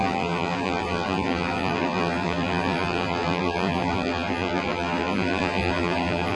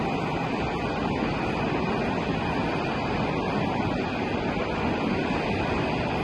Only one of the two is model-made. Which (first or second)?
first